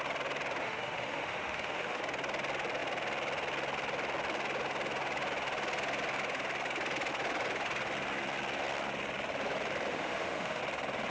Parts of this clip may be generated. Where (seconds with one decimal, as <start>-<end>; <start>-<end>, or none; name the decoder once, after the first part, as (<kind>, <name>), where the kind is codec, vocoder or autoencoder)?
0.6-2.0 (autoencoder, DAC-VAE); 9.9-10.6